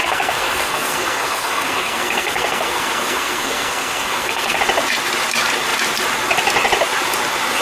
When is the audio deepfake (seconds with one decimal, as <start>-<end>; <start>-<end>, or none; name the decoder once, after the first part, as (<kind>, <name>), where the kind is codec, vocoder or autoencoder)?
0.0-4.6 (codec, SNAC)